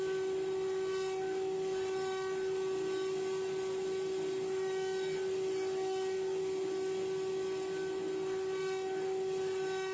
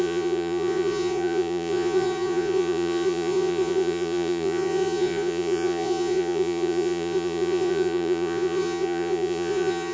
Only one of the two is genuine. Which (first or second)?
first